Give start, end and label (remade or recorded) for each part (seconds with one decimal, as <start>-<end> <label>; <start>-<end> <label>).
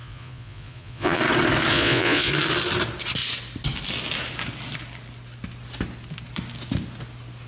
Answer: 0.0-1.2 remade; 1.2-1.7 recorded; 1.7-2.3 remade; 2.3-7.5 recorded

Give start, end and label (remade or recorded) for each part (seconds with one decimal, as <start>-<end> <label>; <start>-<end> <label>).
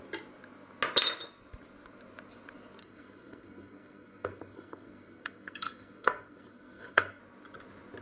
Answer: 0.0-2.8 recorded; 2.8-7.2 remade; 7.2-8.0 recorded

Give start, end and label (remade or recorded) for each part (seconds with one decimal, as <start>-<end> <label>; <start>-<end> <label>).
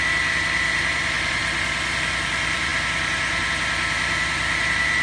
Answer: 0.0-1.4 remade; 1.4-1.9 recorded; 1.9-5.0 remade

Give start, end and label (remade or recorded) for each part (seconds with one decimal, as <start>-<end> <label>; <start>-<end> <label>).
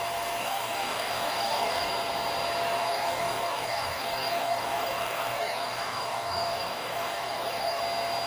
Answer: 0.0-0.4 recorded; 0.4-1.9 remade; 1.9-2.8 recorded; 2.8-7.8 remade; 7.8-8.3 recorded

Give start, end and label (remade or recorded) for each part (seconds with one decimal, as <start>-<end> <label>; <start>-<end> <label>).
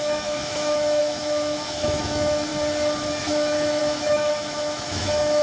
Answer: 0.0-2.5 remade; 2.5-3.2 recorded; 3.2-5.4 remade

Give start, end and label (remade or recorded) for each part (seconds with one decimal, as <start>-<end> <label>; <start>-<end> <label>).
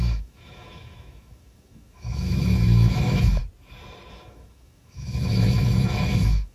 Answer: 0.0-3.4 remade; 3.4-4.1 recorded; 4.1-6.5 remade